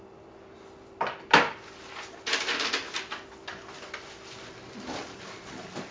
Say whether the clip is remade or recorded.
recorded